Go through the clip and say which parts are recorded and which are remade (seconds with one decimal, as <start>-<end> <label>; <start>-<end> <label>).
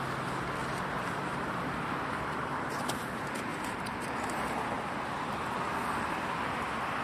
0.0-0.6 recorded; 0.6-2.8 remade; 2.8-3.5 recorded; 3.5-4.7 remade; 4.7-7.0 recorded